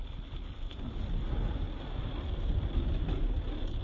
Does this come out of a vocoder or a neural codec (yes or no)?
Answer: no